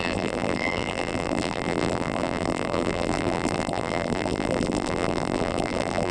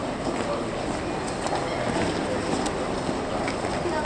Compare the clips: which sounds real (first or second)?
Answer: second